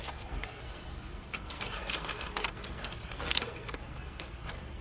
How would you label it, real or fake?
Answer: fake